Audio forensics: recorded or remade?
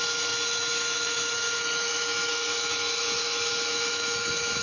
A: remade